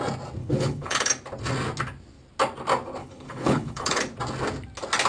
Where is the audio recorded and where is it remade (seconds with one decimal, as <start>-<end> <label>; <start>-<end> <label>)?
0.0-0.4 recorded; 0.4-1.1 remade; 1.1-3.0 recorded; 3.0-4.0 remade; 4.0-5.1 recorded